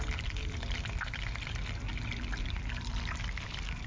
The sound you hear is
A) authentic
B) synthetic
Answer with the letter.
A